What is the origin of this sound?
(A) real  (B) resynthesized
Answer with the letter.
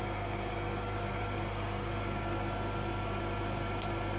A